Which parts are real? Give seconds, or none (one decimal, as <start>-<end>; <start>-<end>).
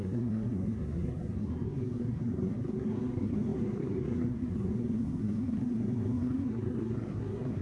none